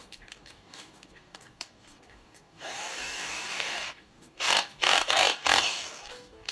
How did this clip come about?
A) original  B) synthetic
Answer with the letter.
B